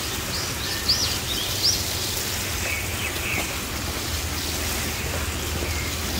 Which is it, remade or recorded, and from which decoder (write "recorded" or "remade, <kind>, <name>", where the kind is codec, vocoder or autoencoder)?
recorded